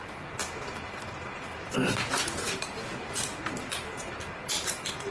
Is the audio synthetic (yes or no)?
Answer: no